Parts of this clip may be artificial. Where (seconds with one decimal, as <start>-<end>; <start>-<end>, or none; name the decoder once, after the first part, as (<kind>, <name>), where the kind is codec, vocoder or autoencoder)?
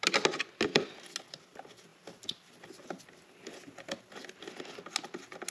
none